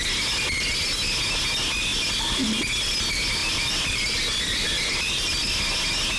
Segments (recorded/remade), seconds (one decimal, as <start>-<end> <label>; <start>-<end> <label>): 0.0-1.9 recorded; 1.9-2.4 remade; 2.4-3.4 recorded; 3.4-5.3 remade; 5.3-6.2 recorded